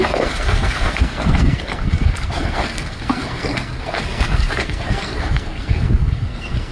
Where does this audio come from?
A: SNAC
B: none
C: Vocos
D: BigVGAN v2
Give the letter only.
A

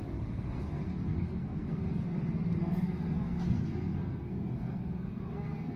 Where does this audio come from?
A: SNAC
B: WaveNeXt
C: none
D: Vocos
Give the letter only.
A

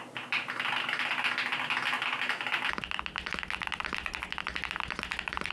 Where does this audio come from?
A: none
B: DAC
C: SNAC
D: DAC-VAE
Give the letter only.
A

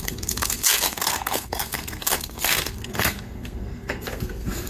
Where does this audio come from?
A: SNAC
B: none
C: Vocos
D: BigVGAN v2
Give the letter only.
A